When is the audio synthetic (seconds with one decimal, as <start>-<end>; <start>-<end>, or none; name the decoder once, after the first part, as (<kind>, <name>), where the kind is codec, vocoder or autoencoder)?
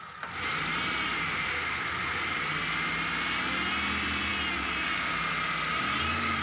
none